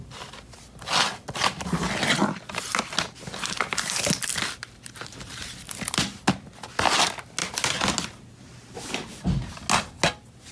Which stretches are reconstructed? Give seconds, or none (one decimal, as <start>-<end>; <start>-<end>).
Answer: none